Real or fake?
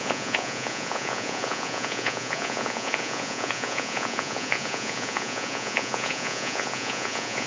fake